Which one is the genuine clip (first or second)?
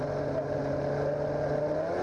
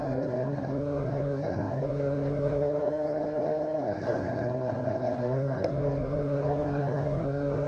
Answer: first